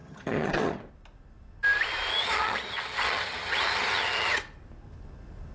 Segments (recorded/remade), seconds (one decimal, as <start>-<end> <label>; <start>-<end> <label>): 0.0-0.8 remade; 0.8-2.1 recorded; 2.1-4.4 remade; 4.4-5.5 recorded